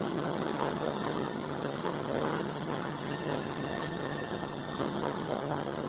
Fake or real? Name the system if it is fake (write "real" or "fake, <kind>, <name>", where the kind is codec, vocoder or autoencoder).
fake, vocoder, HiFi-GAN